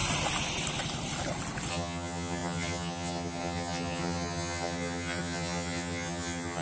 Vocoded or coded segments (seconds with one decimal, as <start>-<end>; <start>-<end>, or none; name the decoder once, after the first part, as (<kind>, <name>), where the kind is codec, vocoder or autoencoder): 1.7-6.6 (vocoder, HiFi-GAN)